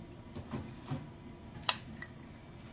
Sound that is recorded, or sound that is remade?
recorded